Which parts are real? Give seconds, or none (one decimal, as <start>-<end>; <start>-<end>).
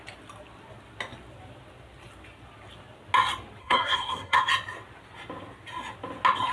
0.0-3.6; 4.5-6.5